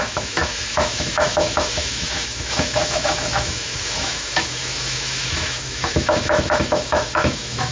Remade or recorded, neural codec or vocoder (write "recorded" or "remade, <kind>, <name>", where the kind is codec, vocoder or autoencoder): remade, autoencoder, DAC-VAE